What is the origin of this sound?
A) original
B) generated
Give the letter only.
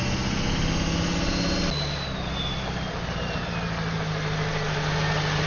A